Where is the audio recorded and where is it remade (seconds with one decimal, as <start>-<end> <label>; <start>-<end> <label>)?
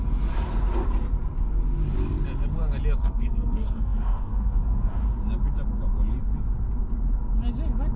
0.0-3.0 recorded; 3.0-4.9 remade; 4.9-8.0 recorded